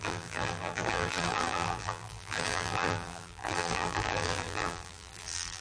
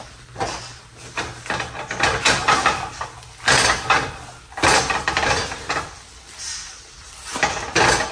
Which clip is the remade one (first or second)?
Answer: first